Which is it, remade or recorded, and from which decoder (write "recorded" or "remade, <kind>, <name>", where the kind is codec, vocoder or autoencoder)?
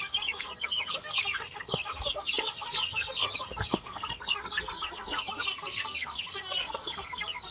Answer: remade, codec, SNAC